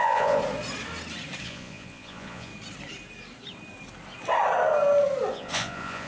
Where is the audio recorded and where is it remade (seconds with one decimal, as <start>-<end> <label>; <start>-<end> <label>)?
0.0-0.4 remade; 0.4-1.4 recorded; 1.4-2.5 remade; 2.5-5.3 recorded; 5.3-6.1 remade